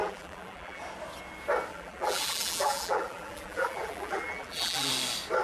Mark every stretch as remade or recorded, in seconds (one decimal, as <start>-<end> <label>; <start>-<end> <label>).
0.0-0.8 remade; 0.8-1.7 recorded; 1.7-4.9 remade; 4.9-5.4 recorded